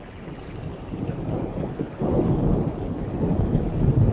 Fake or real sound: fake